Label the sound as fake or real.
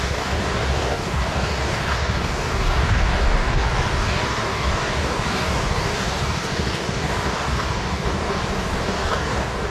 fake